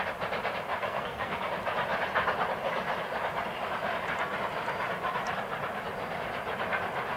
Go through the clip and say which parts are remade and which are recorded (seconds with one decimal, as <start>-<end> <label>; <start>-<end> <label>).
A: 0.0-0.7 recorded; 0.7-1.4 remade; 1.4-7.2 recorded